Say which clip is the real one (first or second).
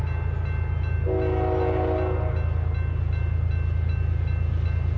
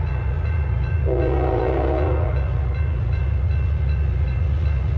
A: first